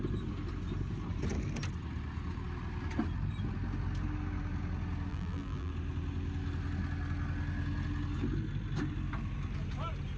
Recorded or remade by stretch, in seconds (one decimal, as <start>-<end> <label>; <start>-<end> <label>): 0.0-5.1 recorded; 5.1-5.7 remade; 5.7-10.2 recorded